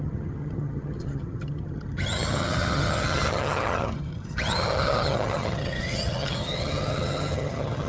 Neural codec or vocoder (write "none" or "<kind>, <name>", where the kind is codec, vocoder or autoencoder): vocoder, HiFi-GAN